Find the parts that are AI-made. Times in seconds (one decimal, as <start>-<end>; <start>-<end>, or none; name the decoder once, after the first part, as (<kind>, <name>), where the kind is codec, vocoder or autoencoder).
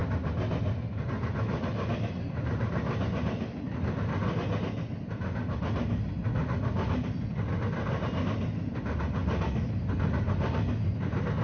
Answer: none